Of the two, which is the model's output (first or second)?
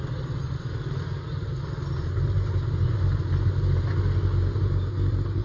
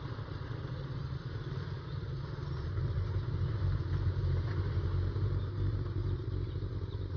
second